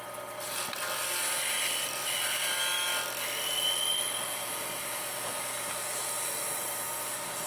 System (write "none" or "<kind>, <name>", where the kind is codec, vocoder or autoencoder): none